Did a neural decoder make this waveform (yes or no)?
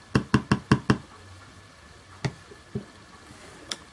no